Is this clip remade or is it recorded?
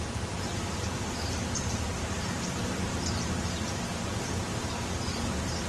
remade